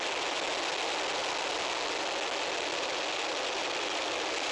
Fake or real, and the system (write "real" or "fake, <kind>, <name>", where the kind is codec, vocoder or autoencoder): real